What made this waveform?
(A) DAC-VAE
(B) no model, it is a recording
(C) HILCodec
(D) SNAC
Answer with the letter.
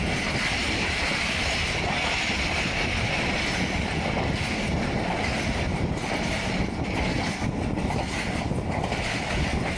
B